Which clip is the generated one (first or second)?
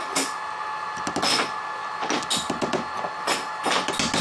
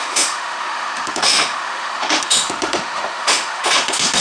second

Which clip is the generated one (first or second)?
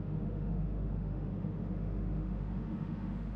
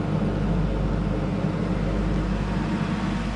first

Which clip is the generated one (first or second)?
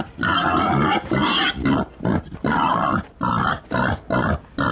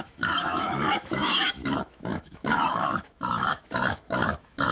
second